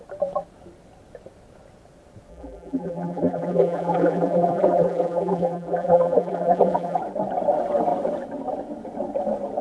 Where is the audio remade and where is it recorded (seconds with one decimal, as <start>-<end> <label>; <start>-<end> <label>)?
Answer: 0.0-2.3 recorded; 2.3-7.0 remade; 7.0-9.6 recorded